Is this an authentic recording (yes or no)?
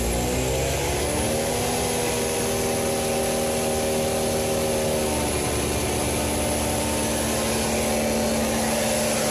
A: yes